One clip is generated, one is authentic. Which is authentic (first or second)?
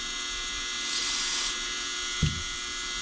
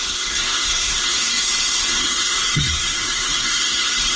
first